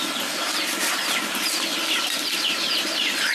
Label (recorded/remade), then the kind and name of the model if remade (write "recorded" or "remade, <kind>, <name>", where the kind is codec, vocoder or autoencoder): recorded